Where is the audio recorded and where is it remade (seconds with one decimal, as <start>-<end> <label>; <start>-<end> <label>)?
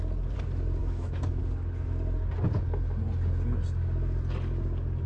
0.0-0.8 recorded; 0.8-1.4 remade; 1.4-5.1 recorded